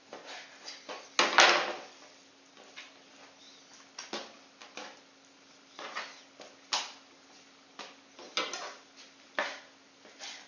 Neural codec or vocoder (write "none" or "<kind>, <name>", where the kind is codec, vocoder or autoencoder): none